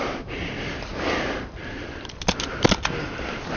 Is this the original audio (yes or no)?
yes